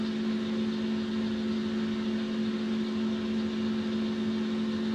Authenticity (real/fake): real